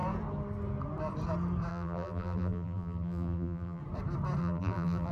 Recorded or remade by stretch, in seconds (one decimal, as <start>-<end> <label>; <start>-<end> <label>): 0.0-1.7 recorded; 1.7-3.8 remade; 3.8-4.4 recorded; 4.4-5.1 remade